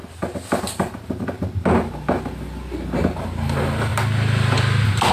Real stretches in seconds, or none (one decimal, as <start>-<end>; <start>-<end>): 0.0-5.1